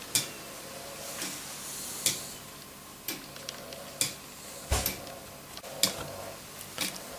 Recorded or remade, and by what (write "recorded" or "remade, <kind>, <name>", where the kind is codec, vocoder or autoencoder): recorded